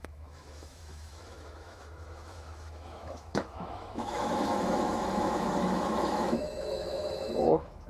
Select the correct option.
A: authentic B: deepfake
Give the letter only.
B